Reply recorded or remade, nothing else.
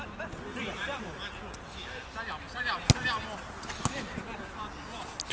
recorded